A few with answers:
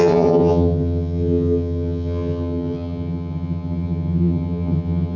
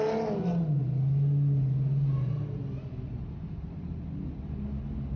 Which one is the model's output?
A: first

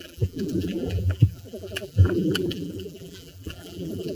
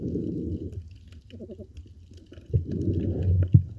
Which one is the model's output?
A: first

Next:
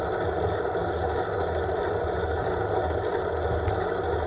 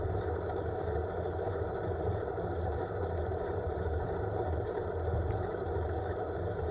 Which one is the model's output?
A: second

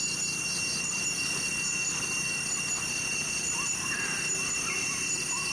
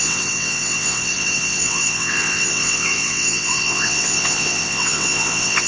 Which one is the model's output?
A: second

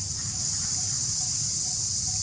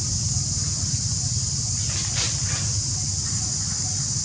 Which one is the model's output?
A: first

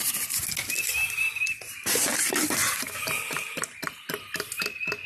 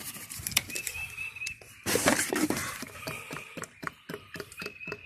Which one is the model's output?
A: second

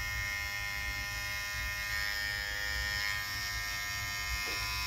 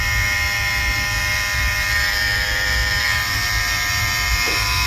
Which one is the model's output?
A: second